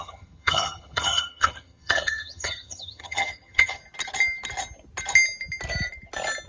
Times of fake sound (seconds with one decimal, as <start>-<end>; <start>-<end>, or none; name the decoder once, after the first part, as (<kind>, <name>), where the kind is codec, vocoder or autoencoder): 0.0-3.8 (vocoder, HiFi-GAN)

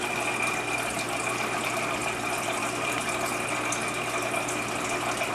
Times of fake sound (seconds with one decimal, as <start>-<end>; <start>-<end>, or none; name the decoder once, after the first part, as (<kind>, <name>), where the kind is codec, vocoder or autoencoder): 2.0-3.3 (vocoder, BigVGAN v2)

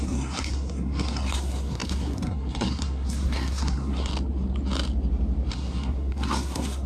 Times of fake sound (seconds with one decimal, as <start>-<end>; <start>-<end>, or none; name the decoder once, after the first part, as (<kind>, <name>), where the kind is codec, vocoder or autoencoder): 0.0-4.1 (codec, SNAC); 5.5-6.9

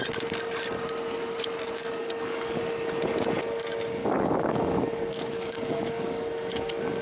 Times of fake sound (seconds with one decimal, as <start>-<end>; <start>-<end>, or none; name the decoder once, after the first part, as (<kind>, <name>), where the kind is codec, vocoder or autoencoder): 2.0-2.6 (codec, DAC); 4.0-7.0

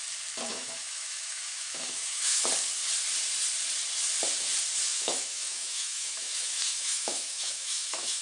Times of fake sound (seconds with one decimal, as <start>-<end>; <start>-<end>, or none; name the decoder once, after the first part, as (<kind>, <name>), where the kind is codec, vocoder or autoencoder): 0.5-2.4 (autoencoder, DAC-VAE); 4.9-8.2

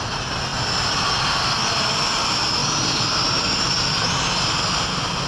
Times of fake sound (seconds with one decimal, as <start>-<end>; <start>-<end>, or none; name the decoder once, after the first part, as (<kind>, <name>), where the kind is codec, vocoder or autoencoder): none

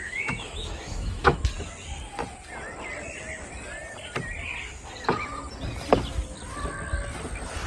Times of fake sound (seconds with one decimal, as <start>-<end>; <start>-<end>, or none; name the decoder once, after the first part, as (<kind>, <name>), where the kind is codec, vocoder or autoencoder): 0.0-1.4 (autoencoder, DAC-VAE)